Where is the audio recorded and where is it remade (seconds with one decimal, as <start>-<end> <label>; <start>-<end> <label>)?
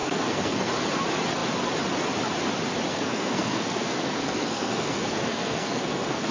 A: 0.0-0.7 remade; 0.7-2.9 recorded; 2.9-6.3 remade